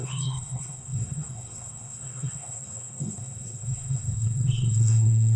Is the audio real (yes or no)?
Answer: no